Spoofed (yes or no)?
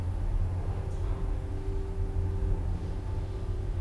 no